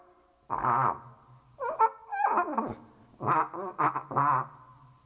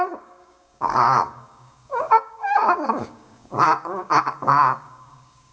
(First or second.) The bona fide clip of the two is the first